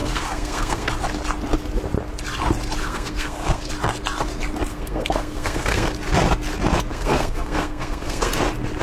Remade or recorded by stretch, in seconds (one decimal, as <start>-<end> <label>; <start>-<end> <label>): 0.0-0.9 remade; 0.9-2.8 recorded; 2.8-3.7 remade; 3.7-4.7 recorded; 4.7-5.9 remade; 5.9-6.9 recorded; 6.9-8.3 remade; 8.3-8.8 recorded